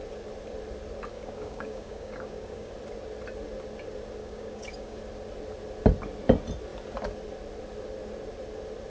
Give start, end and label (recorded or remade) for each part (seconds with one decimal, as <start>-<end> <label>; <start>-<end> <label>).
0.0-1.1 recorded; 1.1-2.7 remade; 2.7-4.2 recorded; 4.2-5.0 remade; 5.0-8.9 recorded